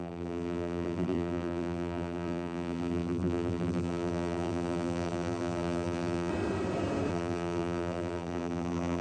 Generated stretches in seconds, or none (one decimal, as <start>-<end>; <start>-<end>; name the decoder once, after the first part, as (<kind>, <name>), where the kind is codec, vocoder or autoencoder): 0.0-6.3 (vocoder, BigVGAN v2); 7.1-9.0